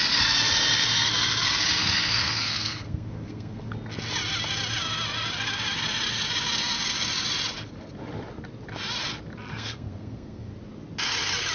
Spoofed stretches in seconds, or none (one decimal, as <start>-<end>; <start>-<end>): 1.8-3.7; 9.5-10.5